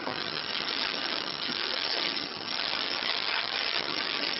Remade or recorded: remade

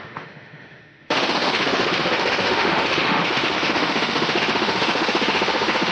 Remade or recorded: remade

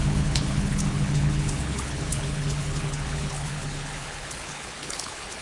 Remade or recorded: remade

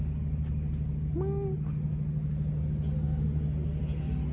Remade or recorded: recorded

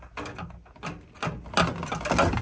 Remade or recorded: recorded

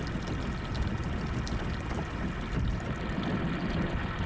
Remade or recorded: recorded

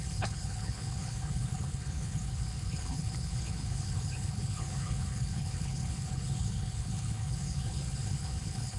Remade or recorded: remade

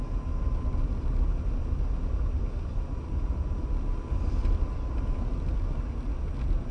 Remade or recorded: recorded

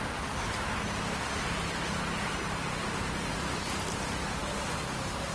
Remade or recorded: recorded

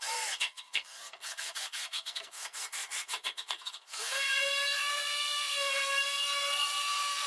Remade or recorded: remade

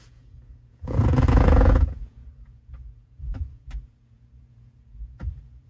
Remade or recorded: remade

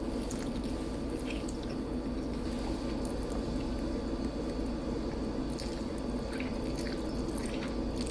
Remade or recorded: recorded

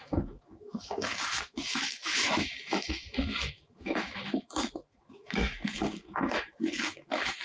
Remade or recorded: remade